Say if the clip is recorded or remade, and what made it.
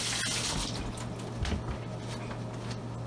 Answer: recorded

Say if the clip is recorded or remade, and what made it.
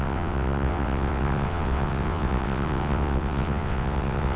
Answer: remade, vocoder, WaveNeXt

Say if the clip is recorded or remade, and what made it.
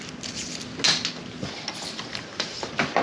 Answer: recorded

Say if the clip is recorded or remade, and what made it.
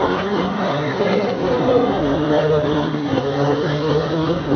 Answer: remade, codec, SNAC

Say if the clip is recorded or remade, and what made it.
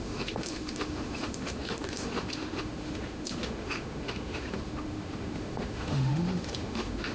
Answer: remade, autoencoder, DAC-VAE